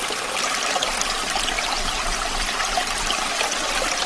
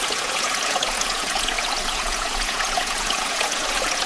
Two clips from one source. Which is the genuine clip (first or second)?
first